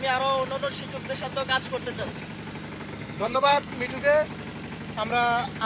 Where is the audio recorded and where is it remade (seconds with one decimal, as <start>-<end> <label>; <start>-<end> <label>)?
0.0-2.9 recorded; 2.9-3.7 remade; 3.7-5.6 recorded